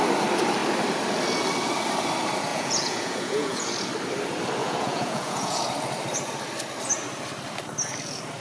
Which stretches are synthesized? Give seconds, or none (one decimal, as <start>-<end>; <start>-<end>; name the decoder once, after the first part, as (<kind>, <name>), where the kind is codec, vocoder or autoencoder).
2.5-3.7 (vocoder, Vocos); 4.6-5.6